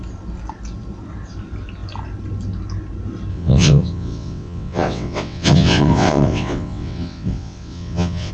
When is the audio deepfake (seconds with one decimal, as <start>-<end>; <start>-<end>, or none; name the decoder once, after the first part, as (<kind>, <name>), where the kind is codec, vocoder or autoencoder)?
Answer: 3.3-8.3 (vocoder, WaveNeXt)

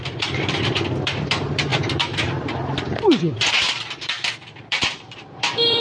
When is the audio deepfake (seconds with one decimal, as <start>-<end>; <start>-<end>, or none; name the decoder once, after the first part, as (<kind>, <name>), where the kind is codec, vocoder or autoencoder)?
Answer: 0.0-5.8 (vocoder, BigVGAN v2)

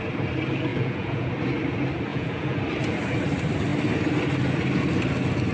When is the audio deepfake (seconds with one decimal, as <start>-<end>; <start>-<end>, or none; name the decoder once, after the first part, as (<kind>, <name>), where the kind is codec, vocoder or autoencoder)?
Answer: 0.7-1.3 (vocoder, Vocos); 2.1-2.6

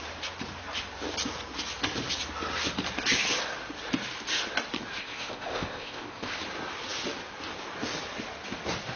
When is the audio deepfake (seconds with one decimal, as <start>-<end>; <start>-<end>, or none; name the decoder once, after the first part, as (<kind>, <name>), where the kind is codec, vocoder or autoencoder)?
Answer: 5.0-6.4 (codec, ZipCodec)

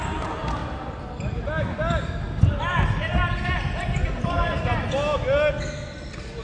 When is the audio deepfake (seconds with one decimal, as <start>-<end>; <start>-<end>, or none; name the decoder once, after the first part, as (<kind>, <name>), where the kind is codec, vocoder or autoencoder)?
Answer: none

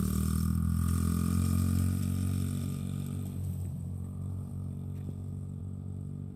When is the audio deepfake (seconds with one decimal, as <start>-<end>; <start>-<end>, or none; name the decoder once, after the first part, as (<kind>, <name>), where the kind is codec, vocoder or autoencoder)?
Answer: 0.0-6.4 (vocoder, BigVGAN v2)

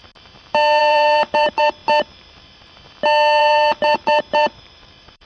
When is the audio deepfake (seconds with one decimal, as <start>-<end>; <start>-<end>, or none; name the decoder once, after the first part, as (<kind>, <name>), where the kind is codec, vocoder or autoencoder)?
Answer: 0.8-1.8 (vocoder, BigVGAN v2); 3.4-5.2